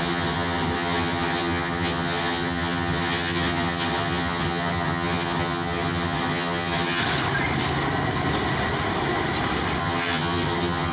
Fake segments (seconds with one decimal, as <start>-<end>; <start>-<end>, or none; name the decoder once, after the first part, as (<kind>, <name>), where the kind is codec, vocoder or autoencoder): 0.0-7.0 (vocoder, HiFi-GAN); 9.8-10.9